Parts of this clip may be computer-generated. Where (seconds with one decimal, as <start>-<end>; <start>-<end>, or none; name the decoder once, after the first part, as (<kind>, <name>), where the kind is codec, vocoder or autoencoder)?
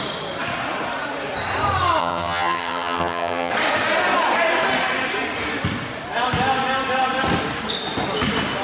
2.0-3.5 (vocoder, HiFi-GAN)